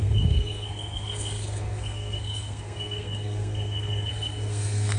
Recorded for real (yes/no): no